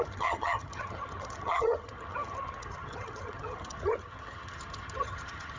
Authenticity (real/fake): fake